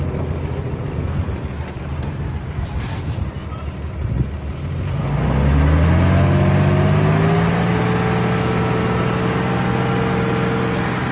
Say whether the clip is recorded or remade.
recorded